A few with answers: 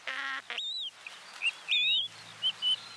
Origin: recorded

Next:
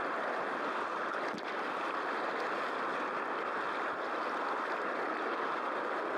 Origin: recorded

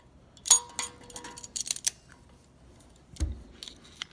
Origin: recorded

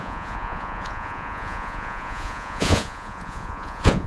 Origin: remade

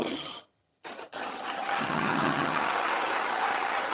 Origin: remade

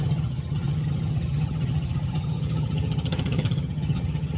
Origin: remade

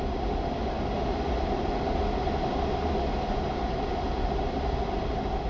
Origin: recorded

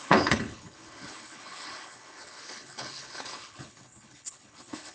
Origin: remade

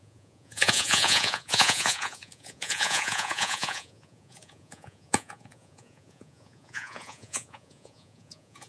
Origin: remade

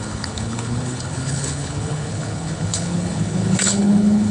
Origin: remade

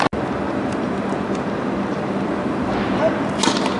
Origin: recorded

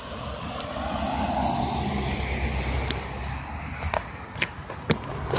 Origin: recorded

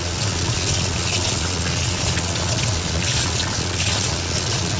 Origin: remade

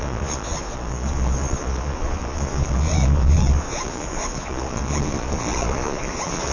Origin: remade